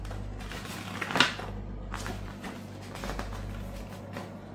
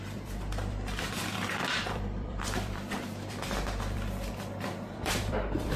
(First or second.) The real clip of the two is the first